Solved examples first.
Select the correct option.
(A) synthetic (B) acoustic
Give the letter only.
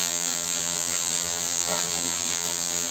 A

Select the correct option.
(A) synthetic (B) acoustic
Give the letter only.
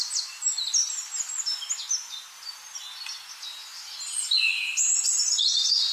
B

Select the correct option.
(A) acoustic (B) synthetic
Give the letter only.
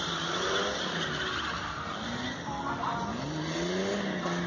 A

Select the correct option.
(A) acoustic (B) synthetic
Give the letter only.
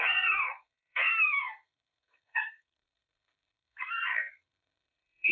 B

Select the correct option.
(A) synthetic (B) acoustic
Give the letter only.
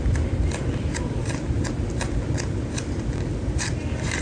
B